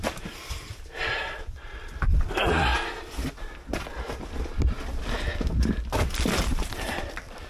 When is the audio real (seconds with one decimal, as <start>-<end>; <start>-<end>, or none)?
2.7-6.1